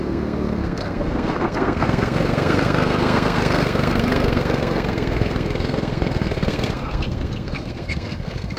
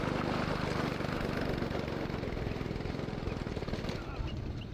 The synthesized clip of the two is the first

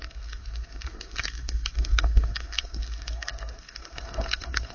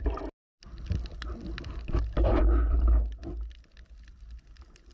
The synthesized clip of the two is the first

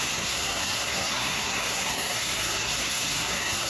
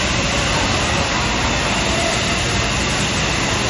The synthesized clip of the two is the first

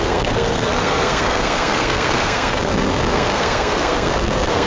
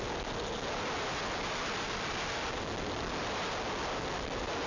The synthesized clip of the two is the first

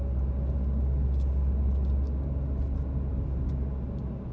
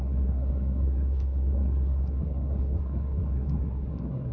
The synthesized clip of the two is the second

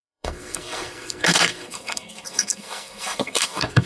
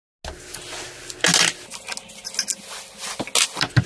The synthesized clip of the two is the first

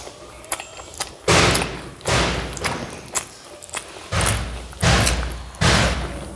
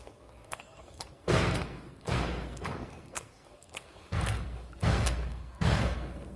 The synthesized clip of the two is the second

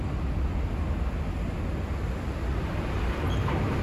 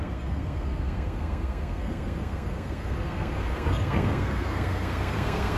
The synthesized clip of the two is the second